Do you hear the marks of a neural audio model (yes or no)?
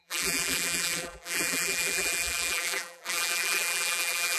yes